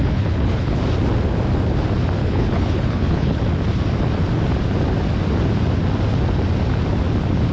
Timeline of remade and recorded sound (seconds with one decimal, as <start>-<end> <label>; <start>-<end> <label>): 0.0-0.8 remade; 0.8-2.2 recorded; 2.2-3.4 remade; 3.4-7.5 recorded